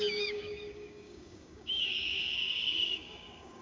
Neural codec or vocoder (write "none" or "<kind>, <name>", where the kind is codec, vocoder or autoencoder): codec, DAC